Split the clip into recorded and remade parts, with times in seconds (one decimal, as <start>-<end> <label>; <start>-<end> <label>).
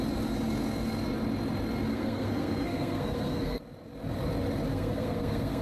0.0-1.9 recorded; 1.9-3.6 remade; 3.6-4.7 recorded; 4.7-5.6 remade